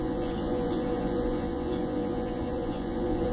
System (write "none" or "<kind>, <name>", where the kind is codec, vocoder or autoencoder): vocoder, Vocos